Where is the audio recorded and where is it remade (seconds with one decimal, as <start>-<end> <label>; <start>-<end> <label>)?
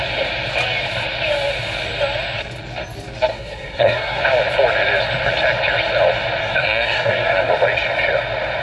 0.0-3.3 recorded; 3.3-4.2 remade; 4.2-6.4 recorded; 6.4-7.5 remade; 7.5-8.6 recorded